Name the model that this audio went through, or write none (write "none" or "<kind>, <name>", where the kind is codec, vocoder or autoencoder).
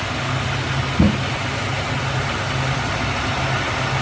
none